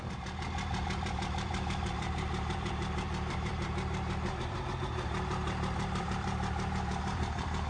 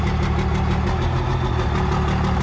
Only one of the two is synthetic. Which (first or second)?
first